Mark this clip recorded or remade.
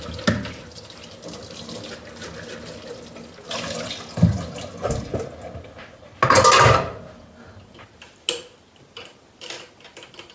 recorded